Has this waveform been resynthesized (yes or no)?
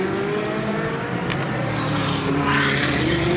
no